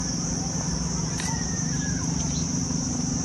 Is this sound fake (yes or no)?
yes